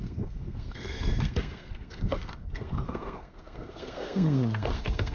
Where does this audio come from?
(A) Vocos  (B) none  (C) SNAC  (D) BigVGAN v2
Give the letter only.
C